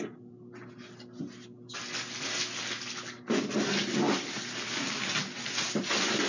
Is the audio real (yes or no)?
yes